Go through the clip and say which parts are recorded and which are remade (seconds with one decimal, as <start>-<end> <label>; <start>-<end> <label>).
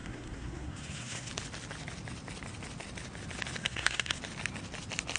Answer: 0.0-1.3 remade; 1.3-3.6 recorded; 3.6-4.2 remade; 4.2-5.2 recorded